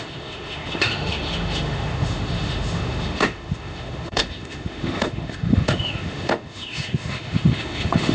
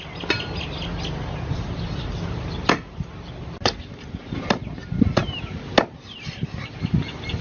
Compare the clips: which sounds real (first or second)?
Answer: second